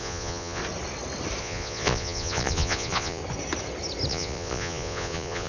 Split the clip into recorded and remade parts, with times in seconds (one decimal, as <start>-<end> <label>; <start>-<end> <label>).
0.0-0.6 remade; 0.6-1.4 recorded; 1.4-3.2 remade; 3.2-4.1 recorded; 4.1-5.5 remade